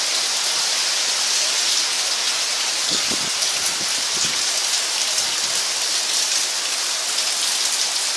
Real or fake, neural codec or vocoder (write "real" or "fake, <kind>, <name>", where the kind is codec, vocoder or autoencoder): real